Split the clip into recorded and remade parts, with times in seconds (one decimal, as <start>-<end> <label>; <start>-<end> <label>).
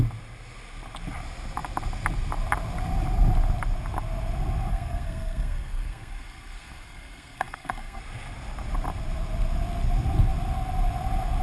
0.0-4.7 recorded; 4.7-8.0 remade; 8.0-11.4 recorded